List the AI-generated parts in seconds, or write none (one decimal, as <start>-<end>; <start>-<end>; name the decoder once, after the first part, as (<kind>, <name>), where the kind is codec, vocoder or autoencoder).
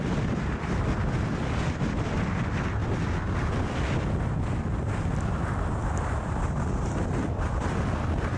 0.0-2.8 (vocoder, BigVGAN v2); 3.5-8.4